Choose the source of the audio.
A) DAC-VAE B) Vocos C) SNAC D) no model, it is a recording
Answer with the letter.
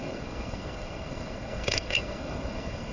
C